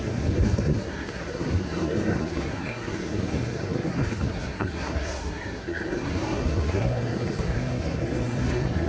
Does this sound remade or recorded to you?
remade